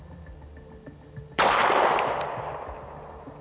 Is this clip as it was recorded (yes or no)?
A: yes